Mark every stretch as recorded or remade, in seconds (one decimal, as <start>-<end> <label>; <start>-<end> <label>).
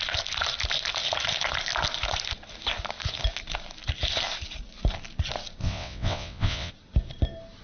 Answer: 0.0-5.6 recorded; 5.6-6.7 remade; 6.7-7.6 recorded